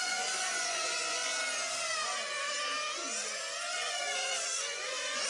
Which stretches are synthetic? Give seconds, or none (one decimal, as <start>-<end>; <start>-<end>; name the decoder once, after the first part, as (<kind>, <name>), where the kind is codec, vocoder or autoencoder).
0.0-1.3 (vocoder, Vocos); 3.6-5.3

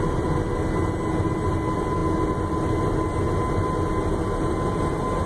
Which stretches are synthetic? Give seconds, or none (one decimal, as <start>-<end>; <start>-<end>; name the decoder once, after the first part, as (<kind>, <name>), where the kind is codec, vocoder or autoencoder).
none

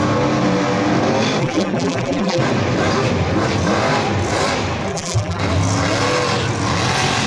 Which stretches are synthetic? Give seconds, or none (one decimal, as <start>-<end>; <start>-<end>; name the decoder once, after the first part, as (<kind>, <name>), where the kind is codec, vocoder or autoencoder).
1.4-2.4 (vocoder, BigVGAN v2); 4.9-5.4

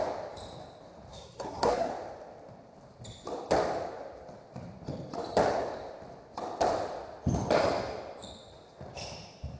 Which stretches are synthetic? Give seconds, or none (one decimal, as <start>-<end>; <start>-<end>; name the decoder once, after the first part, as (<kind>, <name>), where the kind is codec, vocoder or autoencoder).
1.1-1.9 (codec, SNAC)

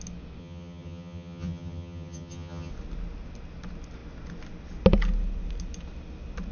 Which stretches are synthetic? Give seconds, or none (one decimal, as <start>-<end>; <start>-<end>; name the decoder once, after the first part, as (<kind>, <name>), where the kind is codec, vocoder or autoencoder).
0.4-2.7 (vocoder, HiFi-GAN)

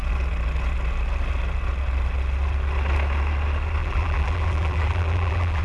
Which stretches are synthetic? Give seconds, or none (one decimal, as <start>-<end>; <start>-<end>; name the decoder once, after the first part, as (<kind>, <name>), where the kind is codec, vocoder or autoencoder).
3.8-5.6 (vocoder, BigVGAN v2)